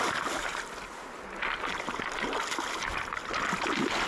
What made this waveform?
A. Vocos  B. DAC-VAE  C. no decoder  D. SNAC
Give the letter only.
C